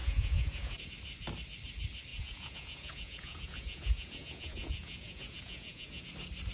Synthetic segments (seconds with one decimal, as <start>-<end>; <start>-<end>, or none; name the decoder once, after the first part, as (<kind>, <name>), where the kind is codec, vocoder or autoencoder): 0.0-0.9 (vocoder, Vocos); 2.1-6.0